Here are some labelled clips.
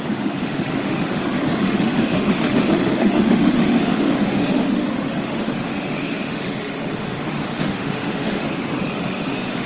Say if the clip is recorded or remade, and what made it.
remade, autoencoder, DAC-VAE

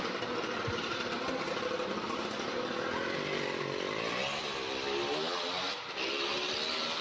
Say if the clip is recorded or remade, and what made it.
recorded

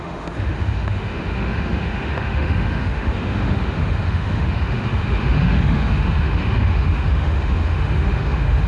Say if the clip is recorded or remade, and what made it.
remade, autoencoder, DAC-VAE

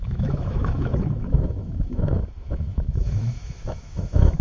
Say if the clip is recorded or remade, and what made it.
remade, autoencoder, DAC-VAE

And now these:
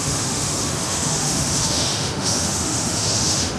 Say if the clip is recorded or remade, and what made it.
remade, autoencoder, DAC-VAE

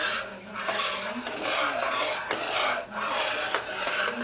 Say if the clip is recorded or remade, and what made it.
recorded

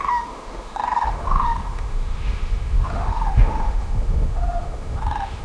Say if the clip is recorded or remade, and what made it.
remade, autoencoder, DAC-VAE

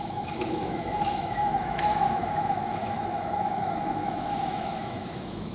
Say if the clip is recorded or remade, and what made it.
remade, autoencoder, DAC-VAE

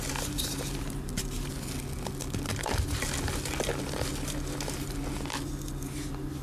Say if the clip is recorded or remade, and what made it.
recorded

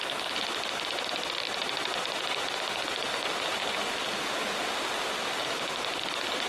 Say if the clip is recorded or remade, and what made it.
recorded